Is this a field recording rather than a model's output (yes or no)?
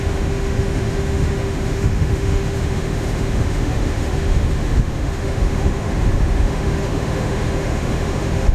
no